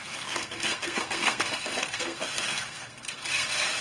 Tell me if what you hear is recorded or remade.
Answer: remade